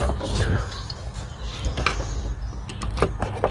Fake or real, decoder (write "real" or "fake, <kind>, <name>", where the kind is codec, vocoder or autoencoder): real